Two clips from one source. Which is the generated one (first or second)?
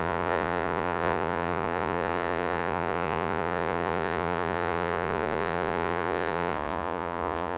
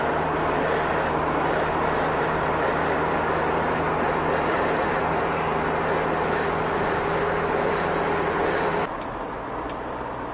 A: first